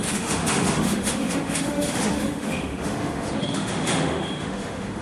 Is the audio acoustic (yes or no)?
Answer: no